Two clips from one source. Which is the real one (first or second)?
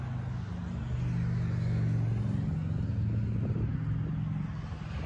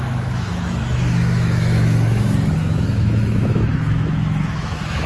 first